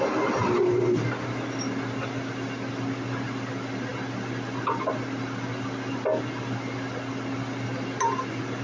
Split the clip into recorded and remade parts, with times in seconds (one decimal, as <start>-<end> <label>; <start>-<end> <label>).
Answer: 0.0-8.6 recorded